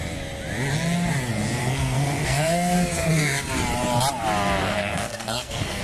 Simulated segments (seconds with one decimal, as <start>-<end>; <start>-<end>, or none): 1.6-3.4; 4.6-5.8